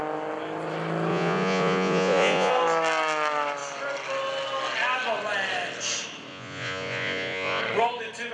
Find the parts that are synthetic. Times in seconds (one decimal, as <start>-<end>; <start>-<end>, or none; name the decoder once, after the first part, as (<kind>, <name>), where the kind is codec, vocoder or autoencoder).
1.1-2.5 (vocoder, Vocos); 6.3-7.6